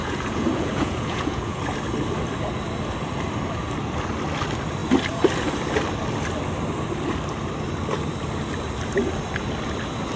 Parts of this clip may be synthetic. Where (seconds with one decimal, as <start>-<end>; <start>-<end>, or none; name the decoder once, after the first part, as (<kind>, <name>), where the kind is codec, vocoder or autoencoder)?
0.0-1.6 (vocoder, Vocos)